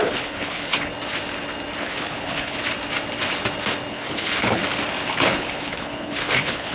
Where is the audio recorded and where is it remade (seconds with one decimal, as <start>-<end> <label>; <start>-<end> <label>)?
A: 0.0-0.9 remade; 0.9-1.8 recorded; 1.8-2.6 remade; 2.6-3.9 recorded; 3.9-4.6 remade; 4.6-5.1 recorded; 5.1-6.7 remade